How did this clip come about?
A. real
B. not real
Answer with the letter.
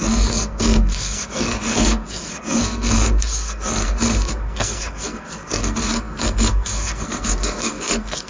B